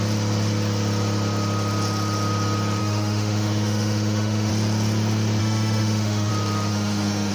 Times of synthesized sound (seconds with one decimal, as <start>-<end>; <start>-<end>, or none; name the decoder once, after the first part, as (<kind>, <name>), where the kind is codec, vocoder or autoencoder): 2.8-4.5 (autoencoder, DAC-VAE); 5.4-6.3; 6.7-7.3